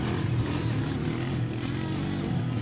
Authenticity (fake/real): real